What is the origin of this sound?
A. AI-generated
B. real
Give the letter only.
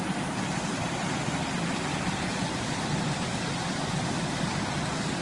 B